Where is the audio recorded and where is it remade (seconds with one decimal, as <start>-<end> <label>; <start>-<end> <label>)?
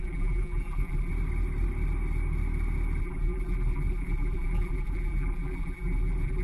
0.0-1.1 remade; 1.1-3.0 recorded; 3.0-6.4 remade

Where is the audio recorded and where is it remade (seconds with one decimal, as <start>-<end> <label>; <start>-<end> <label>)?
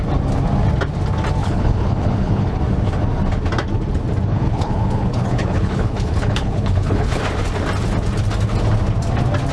0.0-1.4 recorded; 1.4-2.6 remade; 2.6-4.3 recorded; 4.3-7.2 remade; 7.2-9.5 recorded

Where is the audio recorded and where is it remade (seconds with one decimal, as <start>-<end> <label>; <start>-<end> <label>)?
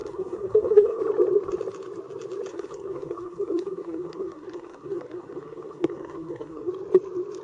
0.0-1.0 remade; 1.0-2.5 recorded; 2.5-6.7 remade; 6.7-7.4 recorded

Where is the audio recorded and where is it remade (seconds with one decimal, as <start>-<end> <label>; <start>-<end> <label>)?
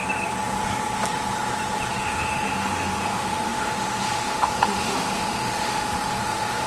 0.0-1.9 recorded; 1.9-6.7 remade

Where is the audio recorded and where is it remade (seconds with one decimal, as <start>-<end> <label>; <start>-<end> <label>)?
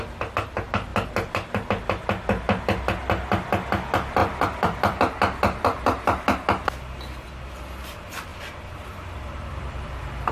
0.0-4.2 recorded; 4.2-5.0 remade; 5.0-8.3 recorded; 8.3-10.3 remade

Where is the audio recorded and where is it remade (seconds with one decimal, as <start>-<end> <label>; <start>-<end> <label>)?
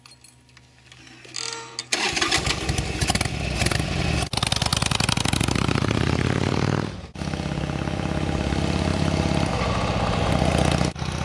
0.0-8.9 recorded; 8.9-9.7 remade; 9.7-11.2 recorded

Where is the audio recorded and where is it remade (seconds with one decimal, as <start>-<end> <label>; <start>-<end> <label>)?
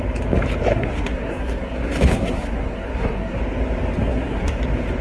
0.0-0.7 recorded; 0.7-3.4 remade; 3.4-4.0 recorded; 4.0-4.6 remade; 4.6-5.0 recorded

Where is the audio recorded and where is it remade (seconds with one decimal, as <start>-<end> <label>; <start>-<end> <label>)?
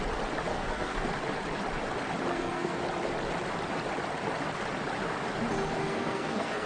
0.0-0.5 recorded; 0.5-1.1 remade; 1.1-2.3 recorded; 2.3-2.8 remade; 2.8-5.8 recorded; 5.8-6.7 remade